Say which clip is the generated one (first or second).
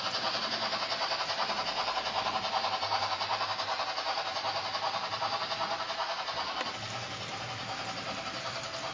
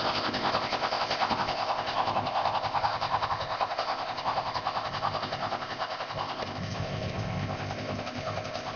second